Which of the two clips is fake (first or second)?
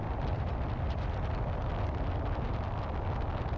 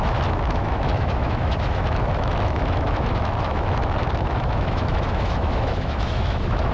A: second